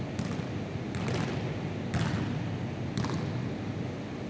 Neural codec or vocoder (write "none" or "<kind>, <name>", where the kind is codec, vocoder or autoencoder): none